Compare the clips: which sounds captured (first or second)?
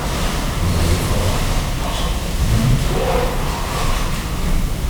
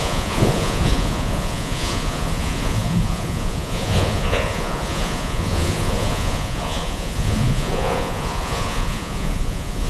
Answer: first